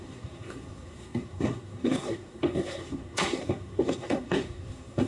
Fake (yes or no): yes